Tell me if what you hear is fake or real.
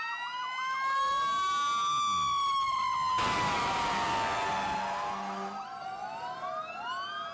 real